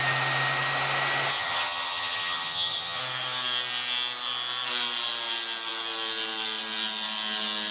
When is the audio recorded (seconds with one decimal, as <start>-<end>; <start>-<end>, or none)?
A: 0.0-1.4; 3.0-7.7

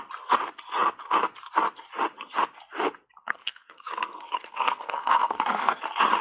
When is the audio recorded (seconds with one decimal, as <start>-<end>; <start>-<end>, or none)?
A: 0.0-3.2; 4.1-4.5; 5.8-6.2

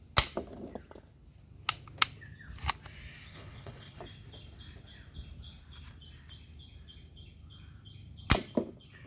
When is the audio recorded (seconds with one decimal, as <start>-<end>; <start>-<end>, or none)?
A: 0.0-3.3; 4.0-9.1